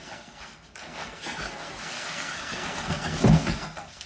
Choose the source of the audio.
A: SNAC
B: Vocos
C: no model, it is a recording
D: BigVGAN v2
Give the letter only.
A